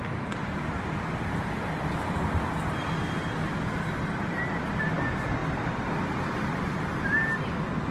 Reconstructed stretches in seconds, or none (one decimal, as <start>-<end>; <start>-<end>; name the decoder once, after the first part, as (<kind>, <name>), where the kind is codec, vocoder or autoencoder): none